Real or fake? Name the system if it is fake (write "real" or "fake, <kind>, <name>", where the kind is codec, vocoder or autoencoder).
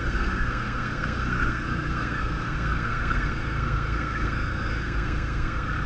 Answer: fake, codec, SNAC